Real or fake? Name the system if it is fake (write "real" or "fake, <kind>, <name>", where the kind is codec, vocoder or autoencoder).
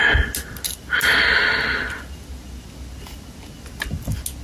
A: real